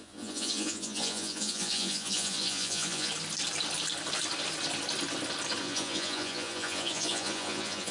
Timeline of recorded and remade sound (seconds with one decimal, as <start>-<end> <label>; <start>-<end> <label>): 0.0-3.1 remade; 3.1-5.6 recorded; 5.6-7.9 remade